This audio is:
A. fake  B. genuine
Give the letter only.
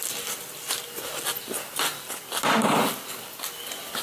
B